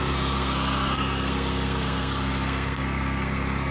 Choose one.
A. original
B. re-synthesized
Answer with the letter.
B